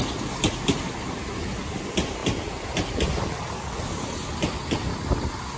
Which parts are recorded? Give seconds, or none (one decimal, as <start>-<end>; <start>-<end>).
0.0-5.6